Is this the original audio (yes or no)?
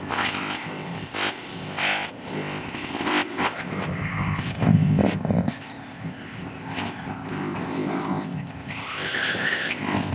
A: no